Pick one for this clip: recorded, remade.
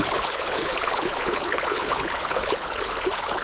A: remade